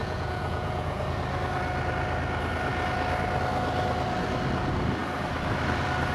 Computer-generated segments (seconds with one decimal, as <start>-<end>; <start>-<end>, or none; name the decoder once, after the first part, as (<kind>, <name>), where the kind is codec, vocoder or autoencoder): 0.0-1.0 (vocoder, Vocos)